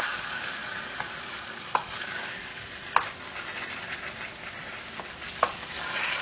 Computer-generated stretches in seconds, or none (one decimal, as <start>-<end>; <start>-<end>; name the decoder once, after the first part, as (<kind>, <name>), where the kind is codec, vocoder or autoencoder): 0.0-0.6 (codec, DAC); 1.2-2.5; 5.1-6.2